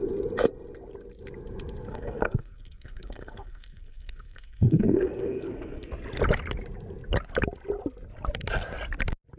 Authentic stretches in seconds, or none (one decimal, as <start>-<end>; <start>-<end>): 0.0-1.9; 5.9-9.4